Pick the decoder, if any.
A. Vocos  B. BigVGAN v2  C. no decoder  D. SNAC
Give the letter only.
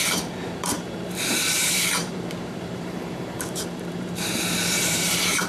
B